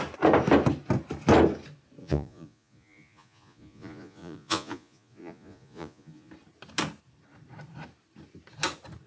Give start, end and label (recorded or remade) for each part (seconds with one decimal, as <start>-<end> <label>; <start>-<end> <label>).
0.0-2.0 recorded; 2.0-6.3 remade; 6.3-9.1 recorded